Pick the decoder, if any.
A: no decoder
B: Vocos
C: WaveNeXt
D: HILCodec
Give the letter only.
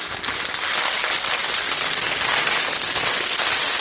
A